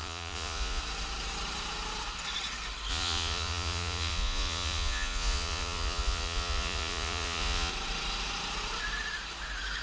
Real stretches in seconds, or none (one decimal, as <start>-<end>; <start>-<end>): 0.8-2.9; 7.7-9.8